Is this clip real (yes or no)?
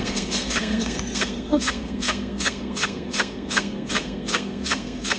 no